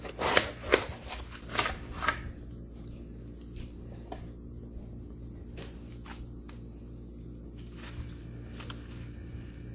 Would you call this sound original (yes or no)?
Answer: yes